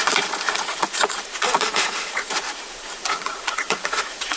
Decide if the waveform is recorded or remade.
remade